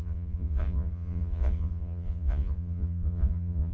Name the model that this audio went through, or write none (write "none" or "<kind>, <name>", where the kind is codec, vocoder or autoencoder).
vocoder, Vocos